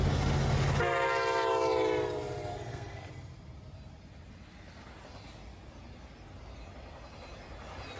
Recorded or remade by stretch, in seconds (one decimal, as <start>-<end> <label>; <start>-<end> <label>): 0.0-2.5 recorded; 2.5-3.1 remade; 3.1-8.0 recorded